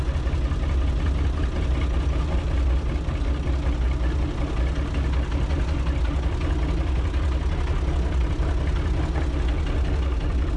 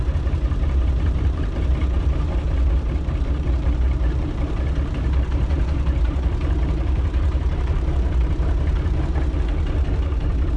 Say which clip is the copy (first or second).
second